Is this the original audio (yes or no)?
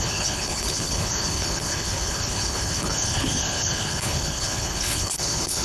no